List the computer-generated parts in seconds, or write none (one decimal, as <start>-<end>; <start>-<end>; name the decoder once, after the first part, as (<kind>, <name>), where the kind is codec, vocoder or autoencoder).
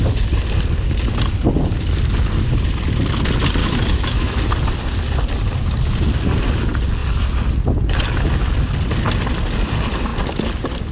3.6-4.4 (autoencoder, DAC-VAE)